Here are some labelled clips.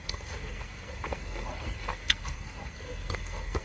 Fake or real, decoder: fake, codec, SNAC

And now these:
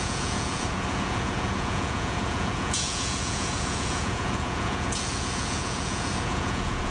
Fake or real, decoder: fake, vocoder, Vocos